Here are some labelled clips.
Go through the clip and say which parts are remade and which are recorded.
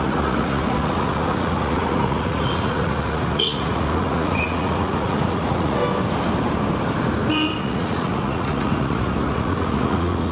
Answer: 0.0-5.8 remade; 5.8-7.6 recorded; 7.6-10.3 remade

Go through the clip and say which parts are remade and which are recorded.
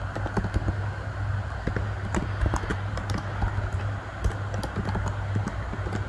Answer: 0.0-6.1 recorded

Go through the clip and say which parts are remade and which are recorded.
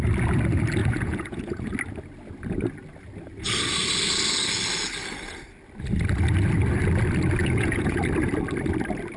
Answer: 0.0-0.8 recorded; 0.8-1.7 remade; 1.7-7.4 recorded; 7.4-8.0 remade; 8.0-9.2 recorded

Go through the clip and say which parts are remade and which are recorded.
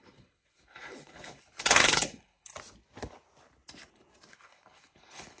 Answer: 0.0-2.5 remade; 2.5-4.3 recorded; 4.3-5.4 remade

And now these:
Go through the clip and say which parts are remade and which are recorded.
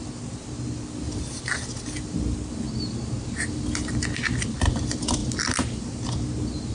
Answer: 0.0-6.7 recorded